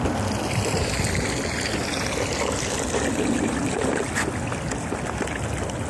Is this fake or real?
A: real